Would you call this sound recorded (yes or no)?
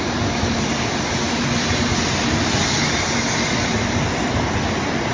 yes